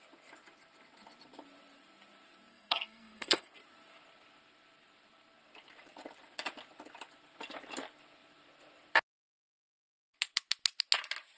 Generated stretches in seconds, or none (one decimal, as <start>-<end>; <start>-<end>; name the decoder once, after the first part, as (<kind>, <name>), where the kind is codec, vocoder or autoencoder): 2.5-3.5 (codec, SNAC)